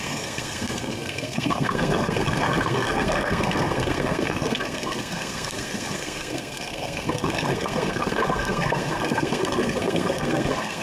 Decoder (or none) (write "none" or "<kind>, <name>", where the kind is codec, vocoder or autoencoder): codec, SNAC